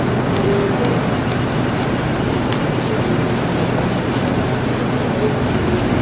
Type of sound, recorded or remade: recorded